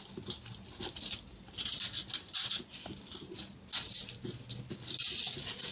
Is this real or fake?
real